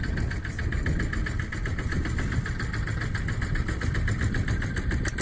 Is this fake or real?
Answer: real